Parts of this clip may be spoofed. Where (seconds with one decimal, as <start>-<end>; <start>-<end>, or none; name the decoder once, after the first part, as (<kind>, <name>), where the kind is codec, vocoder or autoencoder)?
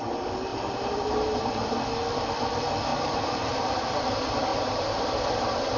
0.5-1.8 (vocoder, BigVGAN v2); 2.9-3.7; 4.5-5.8